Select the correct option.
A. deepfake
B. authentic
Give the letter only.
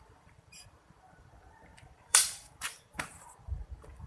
A